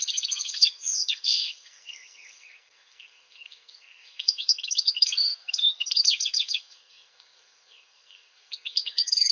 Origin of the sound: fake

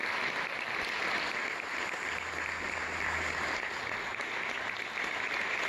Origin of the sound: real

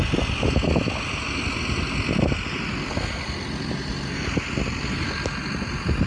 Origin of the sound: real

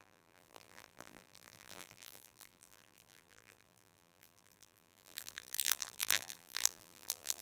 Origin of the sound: fake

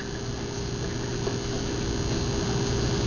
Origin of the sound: real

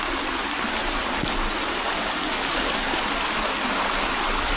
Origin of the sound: real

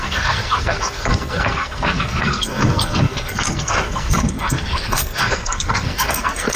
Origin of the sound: fake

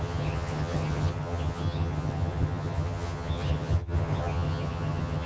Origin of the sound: fake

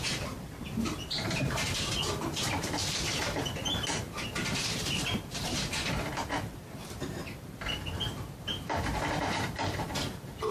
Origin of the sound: fake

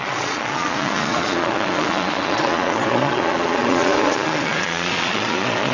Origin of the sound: fake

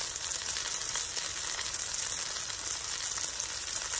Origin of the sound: real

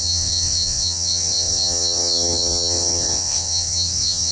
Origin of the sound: fake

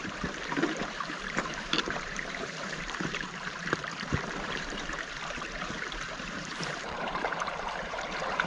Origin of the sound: fake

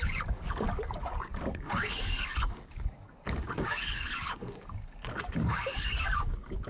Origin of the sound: fake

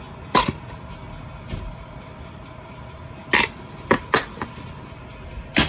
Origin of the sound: real